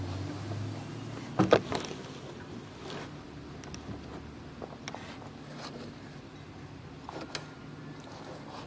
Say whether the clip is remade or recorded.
recorded